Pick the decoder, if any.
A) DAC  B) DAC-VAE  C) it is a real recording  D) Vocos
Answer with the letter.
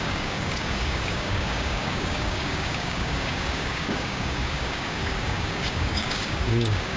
A